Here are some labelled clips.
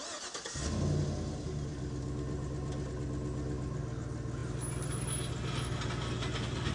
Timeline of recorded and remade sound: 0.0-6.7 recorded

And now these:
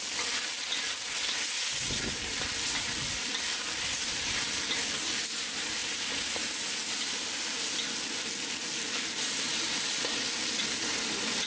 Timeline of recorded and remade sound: 0.0-11.5 recorded

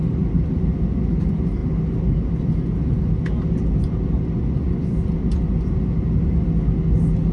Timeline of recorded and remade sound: 0.0-7.3 recorded